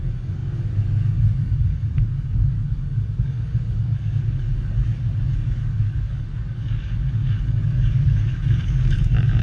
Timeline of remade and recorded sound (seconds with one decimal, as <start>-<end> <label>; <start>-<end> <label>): 0.0-9.4 remade